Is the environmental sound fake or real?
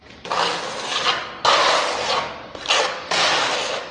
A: real